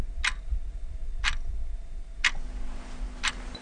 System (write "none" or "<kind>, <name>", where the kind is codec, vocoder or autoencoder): none